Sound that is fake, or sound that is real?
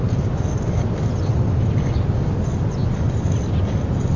real